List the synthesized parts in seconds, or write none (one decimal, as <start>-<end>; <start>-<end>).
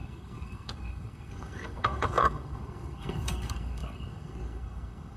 0.0-5.2